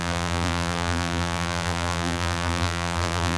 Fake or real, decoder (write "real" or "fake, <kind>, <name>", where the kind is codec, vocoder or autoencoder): fake, vocoder, BigVGAN v2